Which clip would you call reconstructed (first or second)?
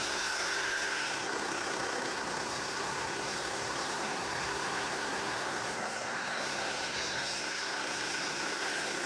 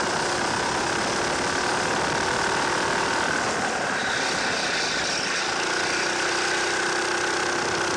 first